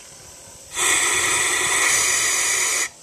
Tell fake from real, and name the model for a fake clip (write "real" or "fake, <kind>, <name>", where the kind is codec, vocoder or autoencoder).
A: real